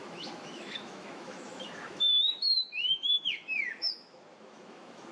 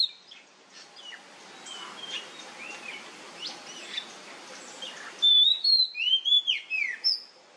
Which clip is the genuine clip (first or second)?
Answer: second